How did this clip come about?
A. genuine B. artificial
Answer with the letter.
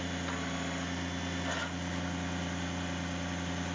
A